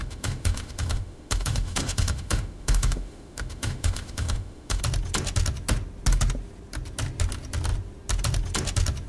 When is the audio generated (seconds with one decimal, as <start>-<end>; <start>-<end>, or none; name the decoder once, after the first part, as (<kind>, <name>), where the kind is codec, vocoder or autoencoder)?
0.0-4.8 (autoencoder, DAC-VAE)